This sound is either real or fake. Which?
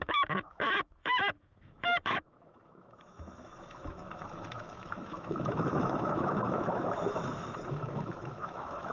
fake